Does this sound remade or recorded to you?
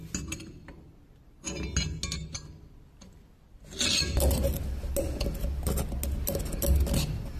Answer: recorded